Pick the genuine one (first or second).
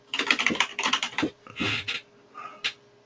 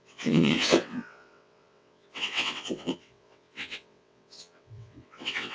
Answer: first